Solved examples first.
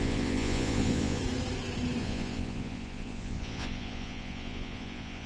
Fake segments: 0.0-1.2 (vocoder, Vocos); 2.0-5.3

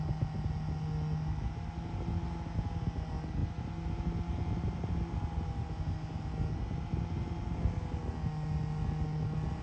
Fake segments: none

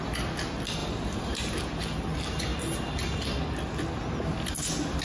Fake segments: 0.8-1.5 (vocoder, BigVGAN v2)

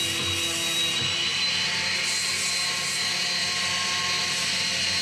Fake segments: none

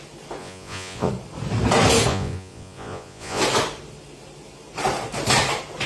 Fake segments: 0.4-1.1 (vocoder, Vocos); 2.1-3.4